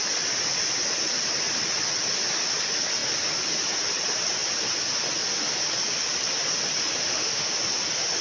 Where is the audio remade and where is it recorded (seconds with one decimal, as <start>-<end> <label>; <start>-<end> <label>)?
0.0-7.0 recorded; 7.0-7.5 remade; 7.5-8.2 recorded